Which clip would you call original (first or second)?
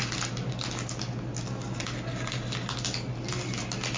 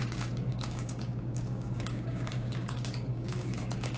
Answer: first